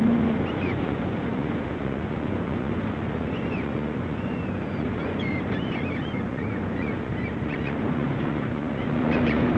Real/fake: fake